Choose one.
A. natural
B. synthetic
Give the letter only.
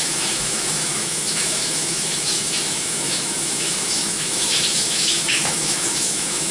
B